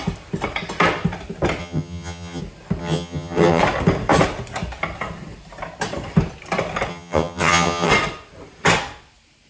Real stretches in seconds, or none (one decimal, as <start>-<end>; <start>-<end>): 0.0-1.6; 2.4-2.8; 3.6-6.9; 7.9-9.5